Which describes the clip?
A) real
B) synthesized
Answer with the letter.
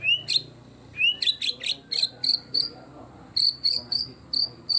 A